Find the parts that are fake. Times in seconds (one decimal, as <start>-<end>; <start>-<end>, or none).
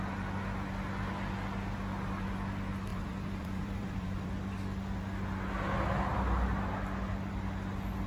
2.9-4.3